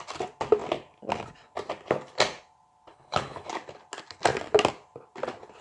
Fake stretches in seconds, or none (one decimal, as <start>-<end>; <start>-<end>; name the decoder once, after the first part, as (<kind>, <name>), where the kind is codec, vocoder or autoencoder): 2.9-3.5 (codec, HILCodec)